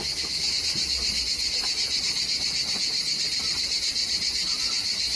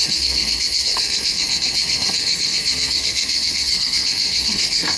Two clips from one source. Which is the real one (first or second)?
first